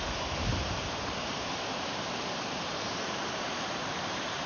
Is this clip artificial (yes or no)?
yes